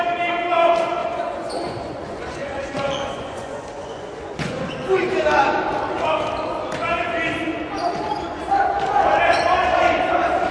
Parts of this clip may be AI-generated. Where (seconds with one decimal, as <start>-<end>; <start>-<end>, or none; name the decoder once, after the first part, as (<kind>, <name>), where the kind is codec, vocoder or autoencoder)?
1.0-4.7 (vocoder, Vocos); 7.5-8.4